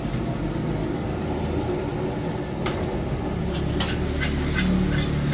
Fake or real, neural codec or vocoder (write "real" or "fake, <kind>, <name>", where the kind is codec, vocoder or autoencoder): real